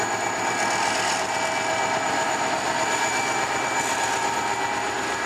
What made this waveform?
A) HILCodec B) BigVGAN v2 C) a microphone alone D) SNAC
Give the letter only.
C